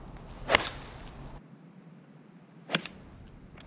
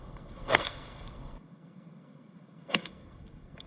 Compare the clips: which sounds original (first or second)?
first